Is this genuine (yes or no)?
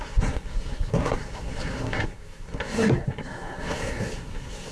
no